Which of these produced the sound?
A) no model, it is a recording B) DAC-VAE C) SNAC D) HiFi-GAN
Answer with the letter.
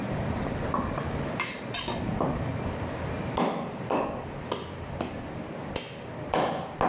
A